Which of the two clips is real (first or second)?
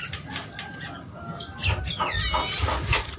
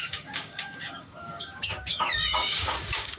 first